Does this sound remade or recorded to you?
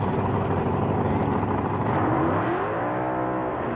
recorded